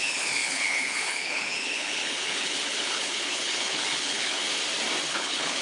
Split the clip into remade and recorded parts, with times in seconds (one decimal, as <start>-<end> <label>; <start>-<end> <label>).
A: 0.0-4.4 remade; 4.4-5.1 recorded; 5.1-5.6 remade